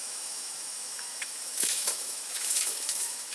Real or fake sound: fake